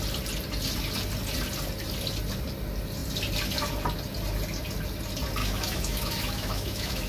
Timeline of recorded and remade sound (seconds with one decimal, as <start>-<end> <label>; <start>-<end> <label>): 0.0-5.4 recorded; 5.4-7.1 remade